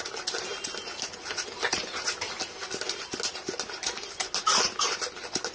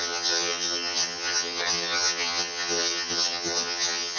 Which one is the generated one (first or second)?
second